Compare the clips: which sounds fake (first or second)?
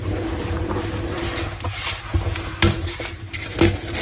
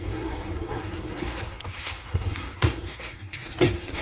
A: second